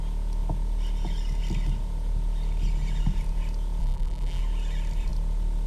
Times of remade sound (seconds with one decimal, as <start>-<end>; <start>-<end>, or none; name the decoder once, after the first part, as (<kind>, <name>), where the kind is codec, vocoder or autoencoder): 3.8-4.4 (vocoder, BigVGAN v2)